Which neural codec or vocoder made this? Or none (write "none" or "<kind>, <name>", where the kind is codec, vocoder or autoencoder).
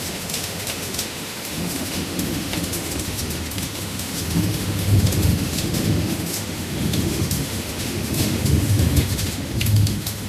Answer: autoencoder, DAC-VAE